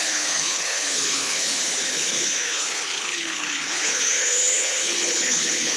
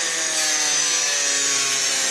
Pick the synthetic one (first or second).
first